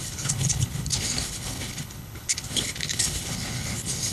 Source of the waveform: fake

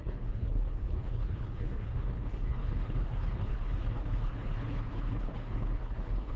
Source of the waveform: fake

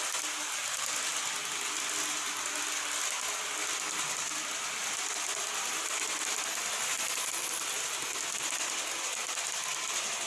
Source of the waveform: real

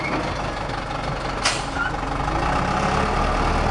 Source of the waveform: real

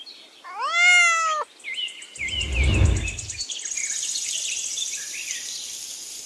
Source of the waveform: real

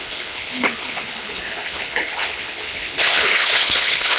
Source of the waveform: fake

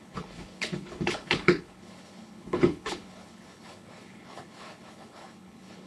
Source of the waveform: fake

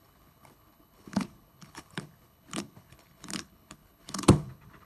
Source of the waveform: fake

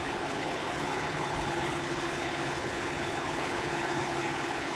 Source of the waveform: fake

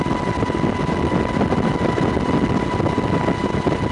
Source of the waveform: real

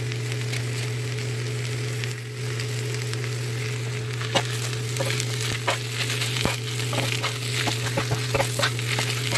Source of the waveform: real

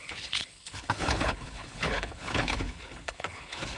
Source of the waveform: fake